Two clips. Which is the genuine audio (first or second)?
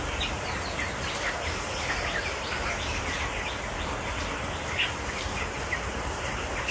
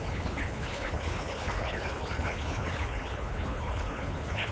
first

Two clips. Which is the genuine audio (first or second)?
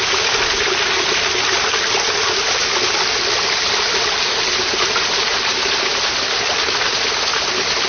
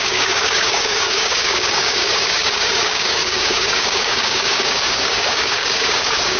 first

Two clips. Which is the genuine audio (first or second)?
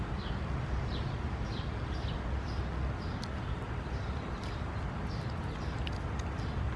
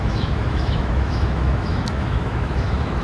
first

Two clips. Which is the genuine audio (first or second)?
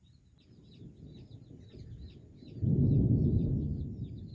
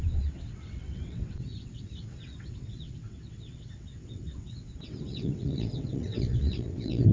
first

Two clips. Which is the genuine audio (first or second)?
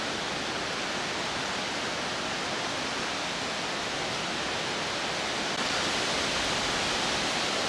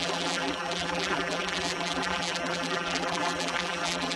first